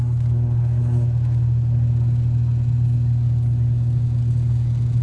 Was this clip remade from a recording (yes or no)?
no